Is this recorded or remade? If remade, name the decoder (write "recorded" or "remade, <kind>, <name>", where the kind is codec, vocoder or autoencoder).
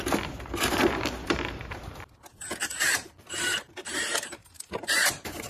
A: remade, vocoder, BigVGAN v2